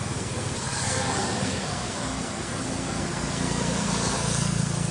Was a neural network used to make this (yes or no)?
yes